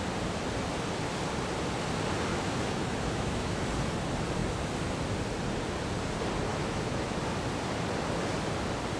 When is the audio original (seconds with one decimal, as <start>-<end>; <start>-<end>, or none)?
0.0-2.3; 3.6-6.5; 7.2-9.0